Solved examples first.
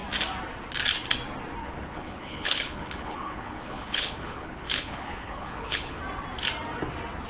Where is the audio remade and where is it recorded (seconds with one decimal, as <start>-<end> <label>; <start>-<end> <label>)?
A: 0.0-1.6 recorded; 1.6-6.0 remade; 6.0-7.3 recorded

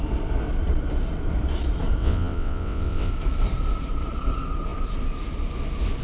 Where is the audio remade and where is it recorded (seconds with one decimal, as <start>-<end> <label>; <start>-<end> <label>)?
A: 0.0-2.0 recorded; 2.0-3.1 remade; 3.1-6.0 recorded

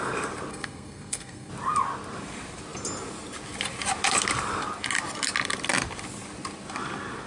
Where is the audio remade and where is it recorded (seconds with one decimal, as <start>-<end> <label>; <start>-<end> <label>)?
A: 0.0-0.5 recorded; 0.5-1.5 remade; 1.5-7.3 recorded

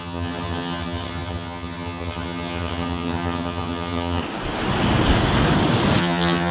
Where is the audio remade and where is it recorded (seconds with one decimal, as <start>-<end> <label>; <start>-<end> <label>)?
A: 0.0-4.2 remade; 4.2-6.0 recorded; 6.0-6.5 remade

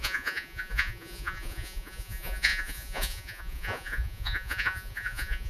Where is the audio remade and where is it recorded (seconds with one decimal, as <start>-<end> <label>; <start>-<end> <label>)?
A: 0.0-5.5 remade

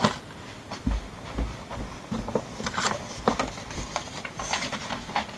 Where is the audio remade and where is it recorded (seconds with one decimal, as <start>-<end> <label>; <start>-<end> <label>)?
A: 0.0-5.4 recorded

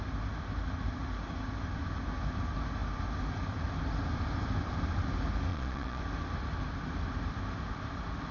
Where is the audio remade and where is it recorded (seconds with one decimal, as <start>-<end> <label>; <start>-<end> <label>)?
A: 0.0-5.5 recorded; 5.5-6.0 remade; 6.0-8.3 recorded